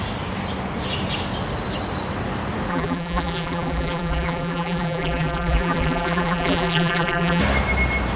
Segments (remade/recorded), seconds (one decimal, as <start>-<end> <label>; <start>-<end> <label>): 0.0-2.7 recorded; 2.7-7.4 remade; 7.4-8.2 recorded